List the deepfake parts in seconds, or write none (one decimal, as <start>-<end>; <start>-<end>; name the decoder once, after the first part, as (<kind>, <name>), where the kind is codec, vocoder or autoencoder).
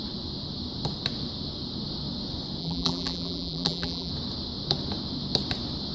2.6-4.1 (vocoder, BigVGAN v2)